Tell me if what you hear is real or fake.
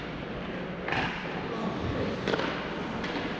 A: real